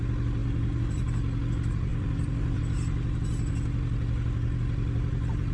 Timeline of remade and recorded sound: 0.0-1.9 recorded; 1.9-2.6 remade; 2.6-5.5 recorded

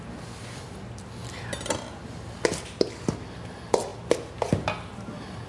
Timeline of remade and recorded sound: 0.0-5.5 recorded

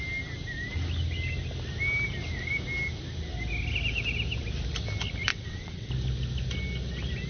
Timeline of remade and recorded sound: 0.0-5.3 recorded; 5.3-5.9 remade; 5.9-7.3 recorded

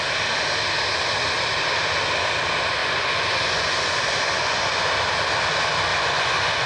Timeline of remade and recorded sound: 0.0-2.8 recorded; 2.8-4.9 remade; 4.9-5.9 recorded; 5.9-6.7 remade